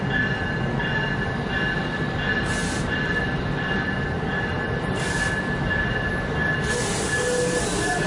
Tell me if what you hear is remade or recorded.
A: recorded